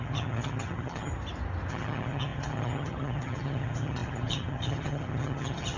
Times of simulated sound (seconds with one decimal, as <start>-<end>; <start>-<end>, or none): 0.0-1.1; 1.7-5.8